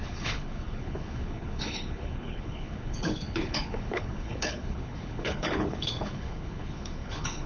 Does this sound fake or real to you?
fake